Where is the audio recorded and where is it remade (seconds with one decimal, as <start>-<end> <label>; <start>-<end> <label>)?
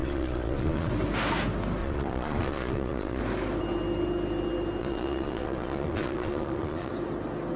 0.0-0.9 remade; 0.9-1.8 recorded; 1.8-3.2 remade; 3.2-4.8 recorded; 4.8-6.9 remade; 6.9-7.6 recorded